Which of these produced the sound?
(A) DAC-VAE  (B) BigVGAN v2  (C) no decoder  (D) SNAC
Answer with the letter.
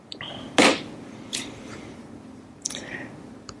C